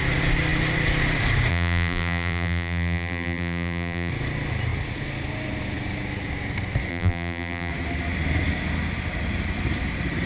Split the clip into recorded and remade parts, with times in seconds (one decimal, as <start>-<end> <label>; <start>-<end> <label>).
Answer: 0.0-1.5 recorded; 1.5-4.1 remade; 4.1-6.9 recorded; 6.9-7.7 remade; 7.7-10.3 recorded